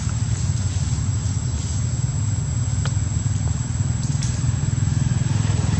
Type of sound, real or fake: real